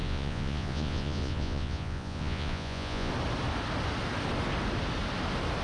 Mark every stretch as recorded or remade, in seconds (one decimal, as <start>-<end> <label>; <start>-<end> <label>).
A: 0.0-3.1 remade; 3.1-5.6 recorded